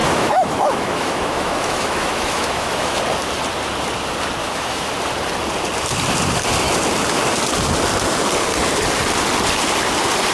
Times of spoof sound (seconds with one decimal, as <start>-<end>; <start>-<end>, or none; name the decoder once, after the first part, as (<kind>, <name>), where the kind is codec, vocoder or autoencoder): 0.0-3.0 (autoencoder, DAC-VAE); 4.4-4.9